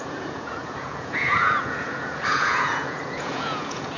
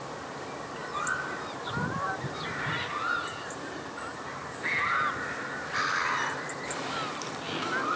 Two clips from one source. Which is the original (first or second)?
second